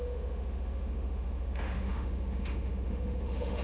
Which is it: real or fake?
fake